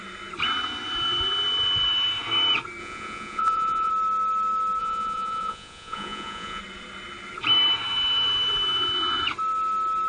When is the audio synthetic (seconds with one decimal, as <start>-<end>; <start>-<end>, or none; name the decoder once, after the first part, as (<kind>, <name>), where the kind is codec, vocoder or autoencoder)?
2.8-3.9 (vocoder, Vocos); 4.8-6.6